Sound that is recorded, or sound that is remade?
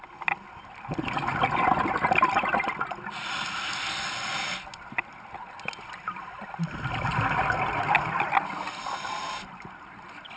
recorded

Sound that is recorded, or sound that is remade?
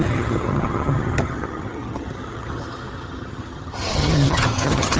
remade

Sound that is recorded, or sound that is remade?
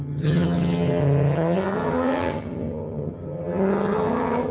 remade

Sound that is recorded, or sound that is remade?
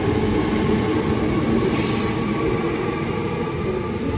recorded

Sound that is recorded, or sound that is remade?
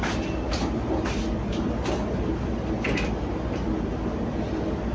recorded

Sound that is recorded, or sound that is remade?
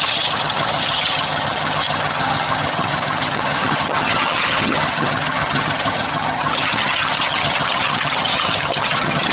remade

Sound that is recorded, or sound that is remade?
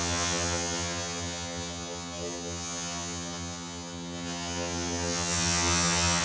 remade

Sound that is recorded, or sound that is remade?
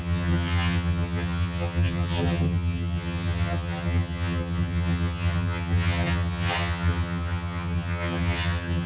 remade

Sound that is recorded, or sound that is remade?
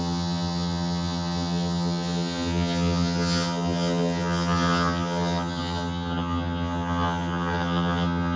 remade